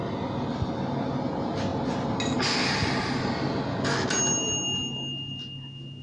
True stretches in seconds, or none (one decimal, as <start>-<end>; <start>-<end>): 0.0-6.0